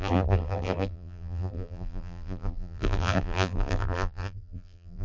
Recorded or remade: remade